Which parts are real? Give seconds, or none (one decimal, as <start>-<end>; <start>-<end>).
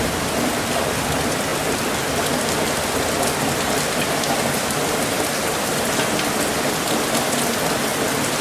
0.0-1.5; 4.9-8.4